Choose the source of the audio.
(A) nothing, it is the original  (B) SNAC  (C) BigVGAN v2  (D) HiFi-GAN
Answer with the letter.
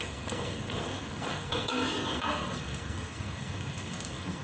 B